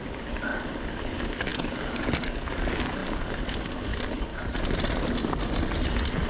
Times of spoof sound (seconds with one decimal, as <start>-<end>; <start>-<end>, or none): 0.0-4.3